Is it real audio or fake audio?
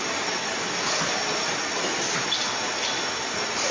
real